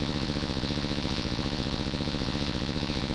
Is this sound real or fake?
fake